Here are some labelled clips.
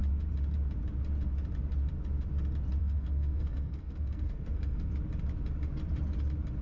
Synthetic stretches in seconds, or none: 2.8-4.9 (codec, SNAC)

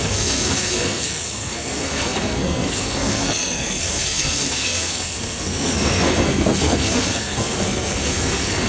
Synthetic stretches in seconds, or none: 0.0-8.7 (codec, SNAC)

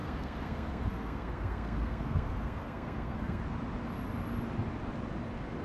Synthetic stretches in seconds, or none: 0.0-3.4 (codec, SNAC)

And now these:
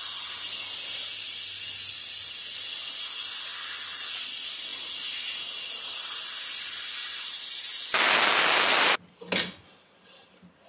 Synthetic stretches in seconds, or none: none

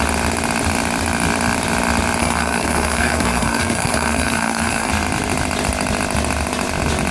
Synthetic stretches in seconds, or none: 2.2-4.9 (codec, SNAC)

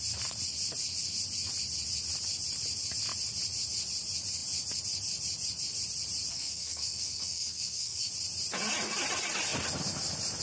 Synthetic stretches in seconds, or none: 6.3-8.1 (codec, SNAC)

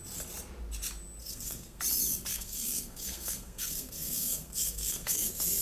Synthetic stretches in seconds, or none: 1.2-1.8 (codec, SNAC); 2.3-5.6